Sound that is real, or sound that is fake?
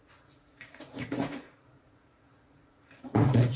fake